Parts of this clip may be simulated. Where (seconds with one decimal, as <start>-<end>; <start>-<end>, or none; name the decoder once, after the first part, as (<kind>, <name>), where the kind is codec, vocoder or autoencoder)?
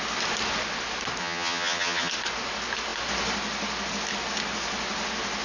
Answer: 1.2-2.1 (vocoder, HiFi-GAN)